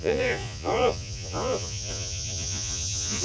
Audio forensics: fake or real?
fake